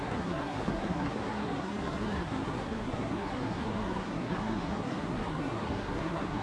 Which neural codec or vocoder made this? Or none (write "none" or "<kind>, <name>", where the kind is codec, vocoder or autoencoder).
codec, SNAC